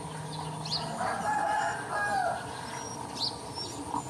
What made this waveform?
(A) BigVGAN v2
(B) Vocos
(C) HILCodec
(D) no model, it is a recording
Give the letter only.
D